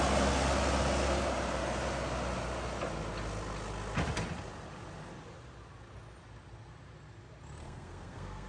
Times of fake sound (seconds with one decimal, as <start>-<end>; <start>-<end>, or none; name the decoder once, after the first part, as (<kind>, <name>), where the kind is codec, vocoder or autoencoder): 7.6-8.5 (codec, SNAC)